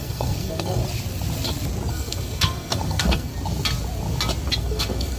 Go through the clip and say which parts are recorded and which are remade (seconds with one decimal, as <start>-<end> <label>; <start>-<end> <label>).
0.0-0.8 remade; 0.8-1.9 recorded; 1.9-3.3 remade; 3.3-4.6 recorded; 4.6-5.2 remade